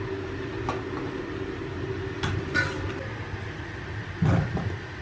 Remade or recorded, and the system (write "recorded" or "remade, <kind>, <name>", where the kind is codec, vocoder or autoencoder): recorded